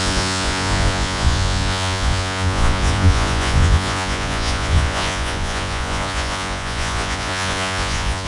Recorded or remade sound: remade